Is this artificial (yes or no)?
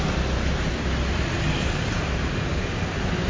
no